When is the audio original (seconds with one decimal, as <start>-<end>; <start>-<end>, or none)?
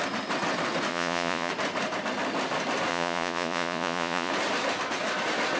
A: 0.0-0.9; 1.5-2.9; 4.3-5.6